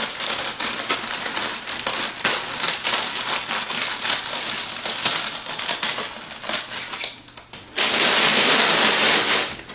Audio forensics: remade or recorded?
recorded